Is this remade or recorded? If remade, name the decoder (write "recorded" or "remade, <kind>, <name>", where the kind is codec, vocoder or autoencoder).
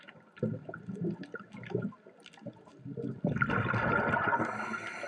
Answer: recorded